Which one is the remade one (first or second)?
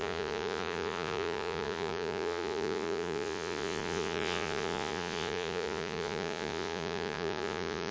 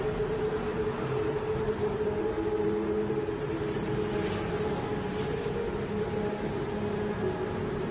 first